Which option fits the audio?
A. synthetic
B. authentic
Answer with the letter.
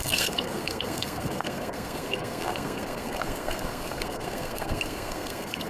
A